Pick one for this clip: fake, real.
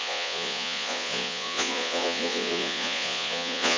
fake